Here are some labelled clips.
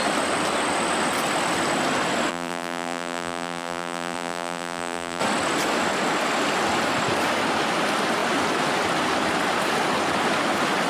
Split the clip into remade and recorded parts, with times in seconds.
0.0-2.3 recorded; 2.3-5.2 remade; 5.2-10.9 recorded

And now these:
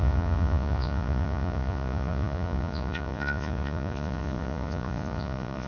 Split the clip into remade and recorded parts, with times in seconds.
0.0-5.7 remade

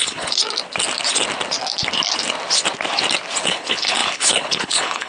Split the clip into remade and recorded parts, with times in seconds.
0.0-0.4 remade; 0.4-3.5 recorded; 3.5-5.1 remade

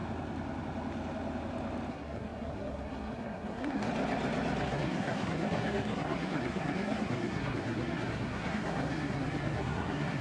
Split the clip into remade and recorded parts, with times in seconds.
0.0-1.9 recorded; 1.9-3.9 remade; 3.9-4.6 recorded; 4.6-10.2 remade

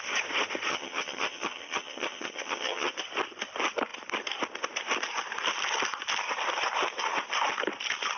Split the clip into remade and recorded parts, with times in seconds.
0.0-0.7 recorded; 0.7-2.9 remade; 2.9-8.2 recorded